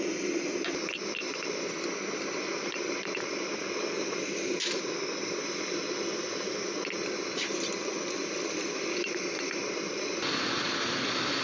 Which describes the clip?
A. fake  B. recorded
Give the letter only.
B